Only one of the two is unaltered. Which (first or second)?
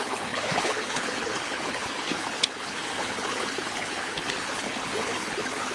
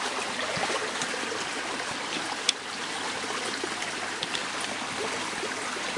second